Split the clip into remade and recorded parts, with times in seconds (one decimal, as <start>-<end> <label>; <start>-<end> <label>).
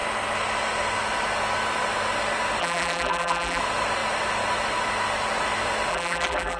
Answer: 0.0-2.6 recorded; 2.6-3.6 remade; 3.6-5.9 recorded; 5.9-6.6 remade